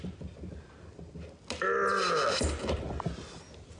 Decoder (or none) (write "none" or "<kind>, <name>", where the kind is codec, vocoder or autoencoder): none